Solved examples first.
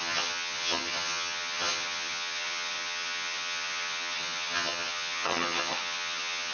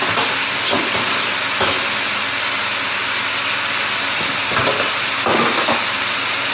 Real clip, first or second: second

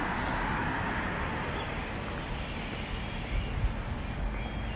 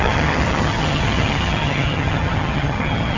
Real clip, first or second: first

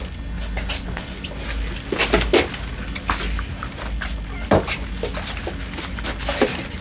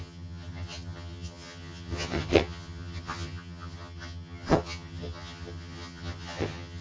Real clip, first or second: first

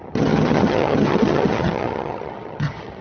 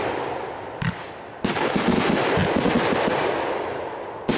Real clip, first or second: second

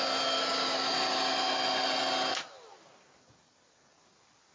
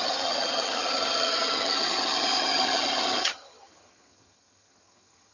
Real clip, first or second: first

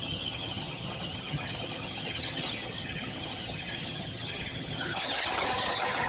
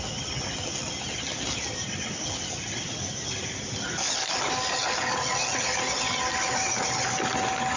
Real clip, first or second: second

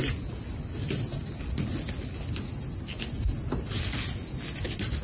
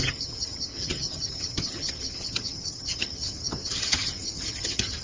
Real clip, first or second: first